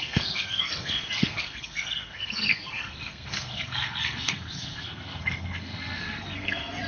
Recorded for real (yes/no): no